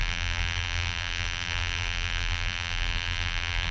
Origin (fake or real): fake